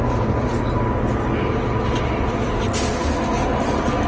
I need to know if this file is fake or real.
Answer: real